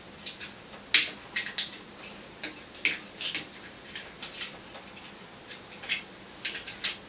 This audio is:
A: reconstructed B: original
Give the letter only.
B